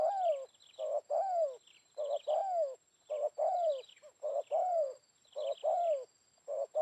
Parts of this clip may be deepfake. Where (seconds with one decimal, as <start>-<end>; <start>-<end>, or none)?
none